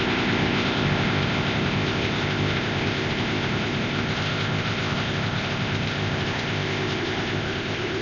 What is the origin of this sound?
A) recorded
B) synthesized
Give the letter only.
B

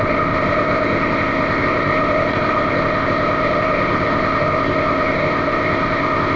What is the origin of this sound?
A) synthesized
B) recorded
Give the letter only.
A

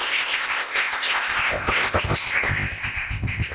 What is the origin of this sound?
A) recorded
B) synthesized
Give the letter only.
B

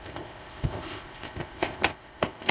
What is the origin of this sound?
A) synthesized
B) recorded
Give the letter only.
A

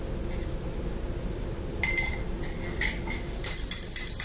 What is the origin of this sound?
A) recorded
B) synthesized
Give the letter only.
A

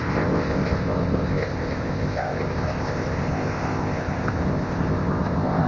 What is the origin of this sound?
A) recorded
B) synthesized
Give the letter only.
B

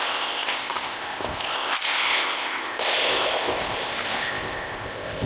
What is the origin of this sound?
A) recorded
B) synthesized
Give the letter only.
B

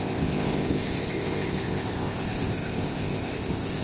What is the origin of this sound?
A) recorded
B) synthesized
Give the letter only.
B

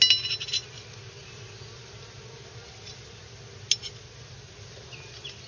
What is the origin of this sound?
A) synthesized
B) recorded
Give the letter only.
B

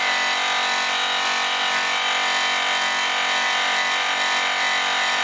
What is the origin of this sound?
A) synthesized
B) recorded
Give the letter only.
B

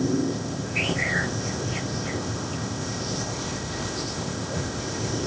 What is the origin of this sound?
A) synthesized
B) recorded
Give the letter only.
A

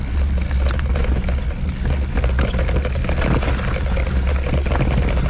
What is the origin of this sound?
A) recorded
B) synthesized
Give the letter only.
A